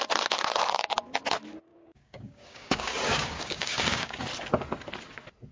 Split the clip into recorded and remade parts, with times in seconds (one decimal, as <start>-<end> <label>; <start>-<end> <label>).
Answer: 0.0-1.7 recorded; 1.7-4.2 remade; 4.2-5.5 recorded